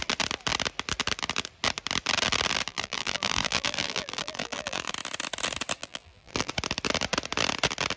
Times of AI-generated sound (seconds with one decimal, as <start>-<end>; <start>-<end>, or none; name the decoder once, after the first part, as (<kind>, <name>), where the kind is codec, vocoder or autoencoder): 2.7-4.9 (vocoder, BigVGAN v2); 5.8-6.5